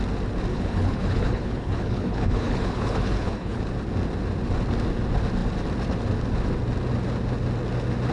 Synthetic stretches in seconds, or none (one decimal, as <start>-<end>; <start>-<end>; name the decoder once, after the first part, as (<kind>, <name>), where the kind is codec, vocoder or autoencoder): 0.5-3.6 (codec, HILCodec)